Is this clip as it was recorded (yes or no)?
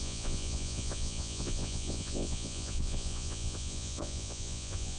no